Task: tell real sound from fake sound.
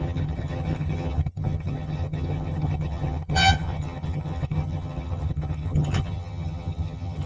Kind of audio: fake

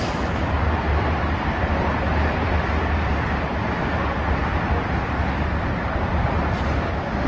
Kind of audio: fake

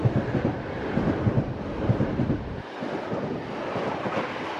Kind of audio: real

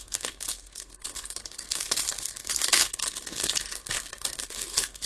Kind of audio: fake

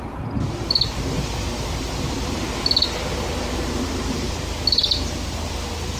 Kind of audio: real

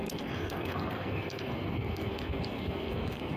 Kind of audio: fake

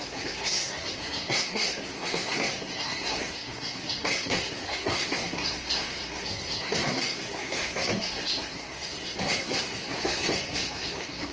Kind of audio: fake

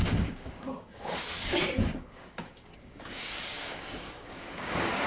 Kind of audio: fake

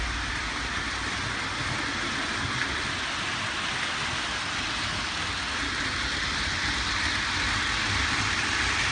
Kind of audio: real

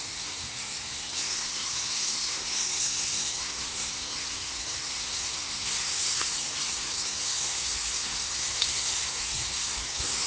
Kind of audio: fake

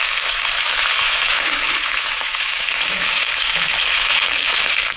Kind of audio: fake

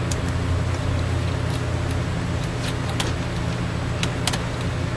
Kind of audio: real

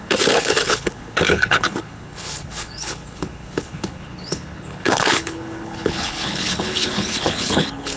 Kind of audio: fake